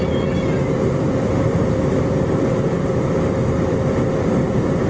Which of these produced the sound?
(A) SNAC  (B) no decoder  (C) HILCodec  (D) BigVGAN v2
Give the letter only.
D